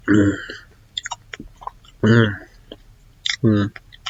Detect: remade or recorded recorded